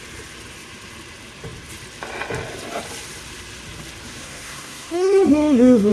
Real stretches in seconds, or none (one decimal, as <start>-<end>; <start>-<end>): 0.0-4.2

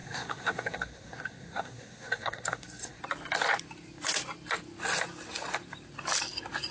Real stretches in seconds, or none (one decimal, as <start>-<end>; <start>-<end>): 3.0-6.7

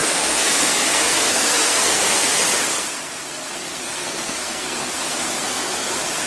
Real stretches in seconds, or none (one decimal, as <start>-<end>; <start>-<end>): none